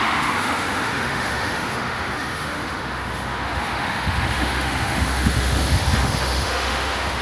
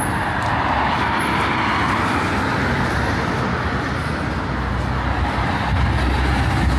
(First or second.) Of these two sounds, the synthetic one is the first